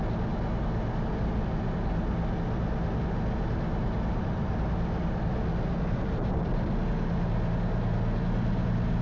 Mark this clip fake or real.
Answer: real